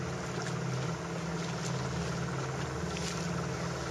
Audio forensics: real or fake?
real